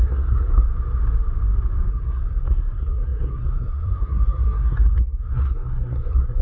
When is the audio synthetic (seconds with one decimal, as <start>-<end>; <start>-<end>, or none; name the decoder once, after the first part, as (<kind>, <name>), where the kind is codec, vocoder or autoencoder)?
0.0-0.7 (codec, SNAC); 1.9-6.4